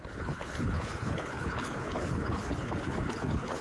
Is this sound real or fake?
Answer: fake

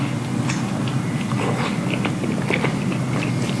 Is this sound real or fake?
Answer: real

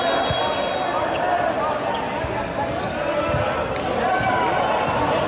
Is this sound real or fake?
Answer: real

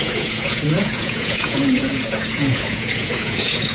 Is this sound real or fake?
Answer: fake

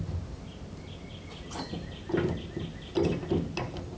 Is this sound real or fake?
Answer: real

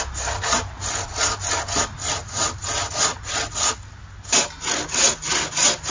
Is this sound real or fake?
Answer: real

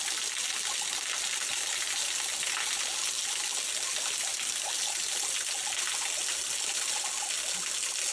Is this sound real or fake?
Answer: real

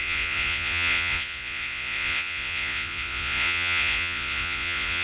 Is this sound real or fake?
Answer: fake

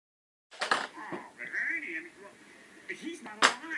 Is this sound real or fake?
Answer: real